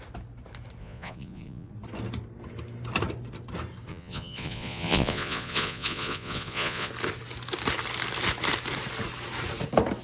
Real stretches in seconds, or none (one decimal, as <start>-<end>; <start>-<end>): 0.0-0.8; 1.7-3.9; 6.9-10.0